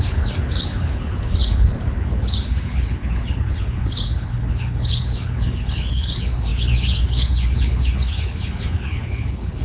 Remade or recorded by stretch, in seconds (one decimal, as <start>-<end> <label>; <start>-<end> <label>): 0.0-9.6 remade